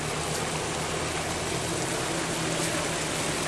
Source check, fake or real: real